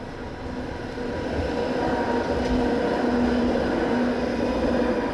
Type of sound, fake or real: real